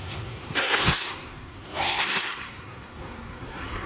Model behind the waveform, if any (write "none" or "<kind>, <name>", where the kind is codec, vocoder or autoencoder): codec, SNAC